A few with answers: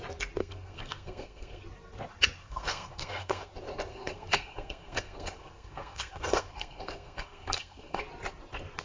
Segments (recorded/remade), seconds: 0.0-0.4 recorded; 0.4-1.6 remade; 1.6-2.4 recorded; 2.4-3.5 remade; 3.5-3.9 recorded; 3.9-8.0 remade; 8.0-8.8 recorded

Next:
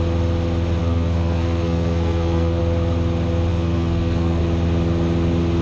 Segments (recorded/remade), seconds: 0.0-0.8 recorded; 0.8-2.6 remade; 2.6-3.5 recorded; 3.5-4.4 remade; 4.4-5.6 recorded